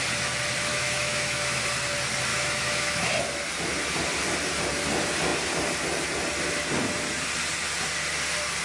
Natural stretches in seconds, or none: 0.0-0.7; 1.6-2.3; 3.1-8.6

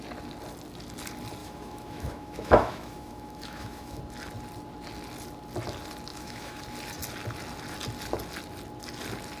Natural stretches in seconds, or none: 0.0-1.4; 4.0-6.1; 6.6-9.4